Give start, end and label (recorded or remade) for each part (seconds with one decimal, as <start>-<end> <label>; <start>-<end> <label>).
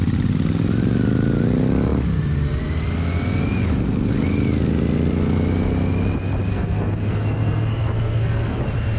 0.0-6.5 recorded; 6.5-8.6 remade; 8.6-9.0 recorded